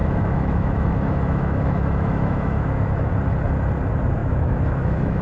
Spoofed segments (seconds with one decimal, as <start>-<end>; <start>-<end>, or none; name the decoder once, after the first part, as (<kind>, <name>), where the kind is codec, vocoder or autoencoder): 0.0-3.1 (autoencoder, DAC-VAE); 4.2-5.2